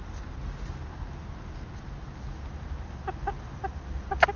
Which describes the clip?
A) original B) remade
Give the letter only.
A